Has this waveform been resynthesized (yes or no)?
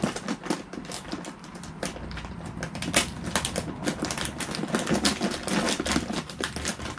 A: no